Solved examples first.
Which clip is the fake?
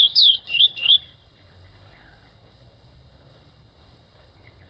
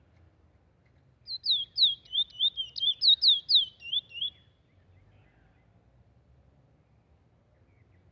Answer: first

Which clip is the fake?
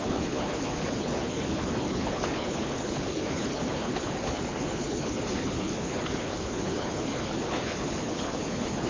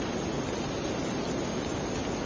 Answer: first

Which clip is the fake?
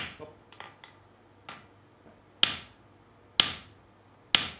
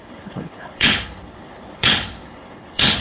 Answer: second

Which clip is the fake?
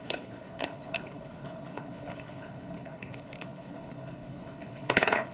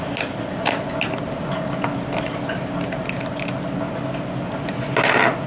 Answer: first